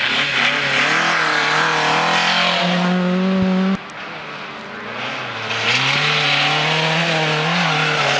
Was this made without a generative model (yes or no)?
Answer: yes